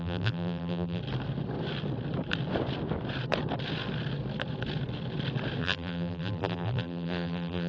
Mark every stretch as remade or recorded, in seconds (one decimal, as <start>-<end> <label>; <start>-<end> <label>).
0.0-1.0 remade; 1.0-5.6 recorded; 5.6-7.7 remade